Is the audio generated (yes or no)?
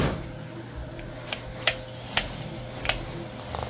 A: no